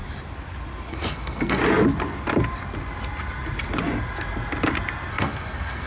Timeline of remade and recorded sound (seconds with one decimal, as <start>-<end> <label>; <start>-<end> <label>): 0.0-0.9 recorded; 0.9-1.6 remade; 1.6-5.1 recorded; 5.1-5.9 remade

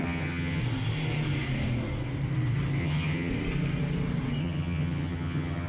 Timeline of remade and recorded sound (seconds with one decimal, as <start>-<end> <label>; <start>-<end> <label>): 0.0-0.6 remade; 0.6-2.8 recorded; 2.8-3.3 remade; 3.3-4.4 recorded; 4.4-5.7 remade